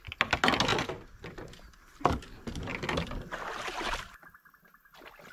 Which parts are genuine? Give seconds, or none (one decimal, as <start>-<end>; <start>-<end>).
0.0-5.3